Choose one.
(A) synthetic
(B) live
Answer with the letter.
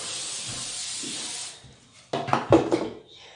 B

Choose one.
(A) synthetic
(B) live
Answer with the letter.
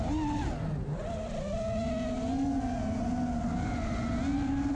B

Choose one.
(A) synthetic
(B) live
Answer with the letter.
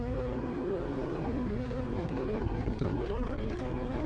A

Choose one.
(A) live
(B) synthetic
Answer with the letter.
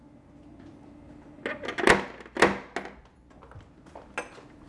A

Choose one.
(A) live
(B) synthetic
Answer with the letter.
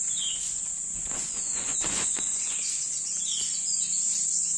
B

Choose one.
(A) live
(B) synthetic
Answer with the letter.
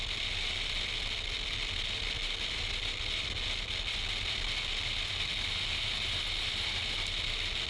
A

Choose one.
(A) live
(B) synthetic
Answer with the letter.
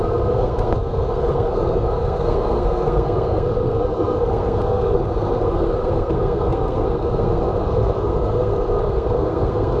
B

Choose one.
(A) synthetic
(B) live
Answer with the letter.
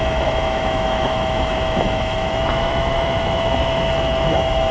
A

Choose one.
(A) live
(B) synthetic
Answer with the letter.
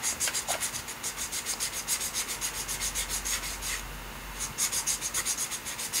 A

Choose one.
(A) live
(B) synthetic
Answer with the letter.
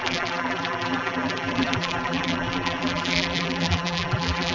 B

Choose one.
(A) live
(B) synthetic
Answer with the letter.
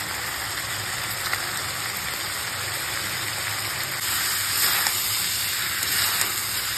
A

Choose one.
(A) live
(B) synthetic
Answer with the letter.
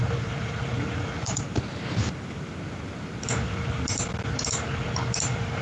B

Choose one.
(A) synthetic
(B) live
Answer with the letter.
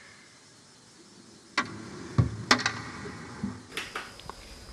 B